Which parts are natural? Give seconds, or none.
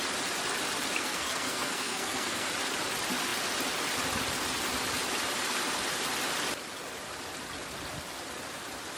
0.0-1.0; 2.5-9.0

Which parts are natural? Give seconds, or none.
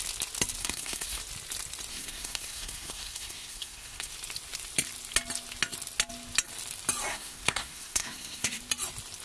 0.0-0.6; 1.2-1.9; 4.1-7.1; 8.6-9.2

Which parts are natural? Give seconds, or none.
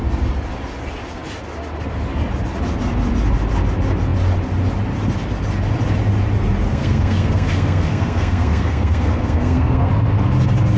0.0-6.7; 9.9-10.8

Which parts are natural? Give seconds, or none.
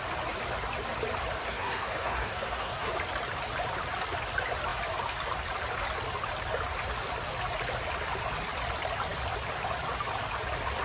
0.0-1.4; 2.9-10.8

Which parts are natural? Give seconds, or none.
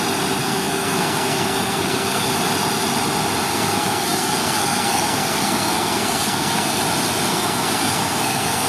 0.0-0.4; 2.3-3.5; 6.8-7.3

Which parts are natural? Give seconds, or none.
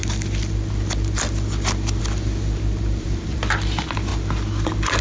0.0-5.0